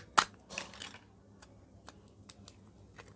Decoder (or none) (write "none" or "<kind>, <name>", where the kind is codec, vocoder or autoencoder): none